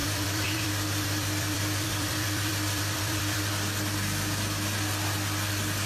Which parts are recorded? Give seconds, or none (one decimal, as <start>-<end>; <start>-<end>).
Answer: 3.5-5.9